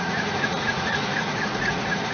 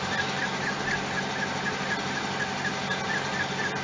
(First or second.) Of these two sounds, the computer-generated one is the first